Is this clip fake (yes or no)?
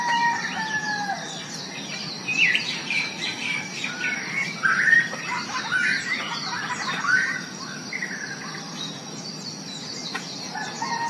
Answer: yes